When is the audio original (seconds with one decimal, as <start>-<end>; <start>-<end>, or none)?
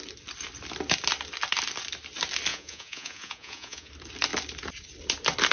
0.0-2.5; 3.9-5.5